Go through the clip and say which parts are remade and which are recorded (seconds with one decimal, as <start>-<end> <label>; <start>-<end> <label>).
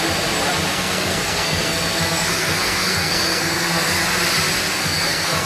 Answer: 0.0-0.7 recorded; 0.7-4.0 remade; 4.0-4.7 recorded; 4.7-5.5 remade